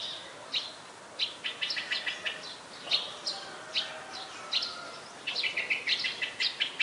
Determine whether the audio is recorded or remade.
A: recorded